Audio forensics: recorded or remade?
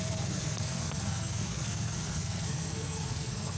remade